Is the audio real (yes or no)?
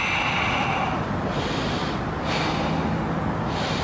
yes